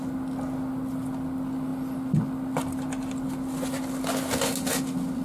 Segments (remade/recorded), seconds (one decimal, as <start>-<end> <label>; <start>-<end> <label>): 0.0-5.2 recorded